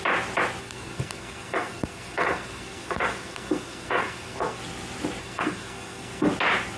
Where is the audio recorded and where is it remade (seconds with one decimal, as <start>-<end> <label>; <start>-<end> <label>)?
0.0-0.6 recorded; 0.6-4.6 remade; 4.6-5.2 recorded; 5.2-6.3 remade; 6.3-6.8 recorded